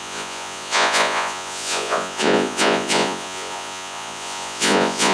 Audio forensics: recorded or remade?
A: remade